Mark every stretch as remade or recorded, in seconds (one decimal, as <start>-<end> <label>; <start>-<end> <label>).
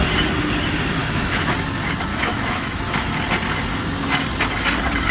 0.0-1.0 recorded; 1.0-1.5 remade; 1.5-2.1 recorded; 2.1-3.1 remade; 3.1-5.1 recorded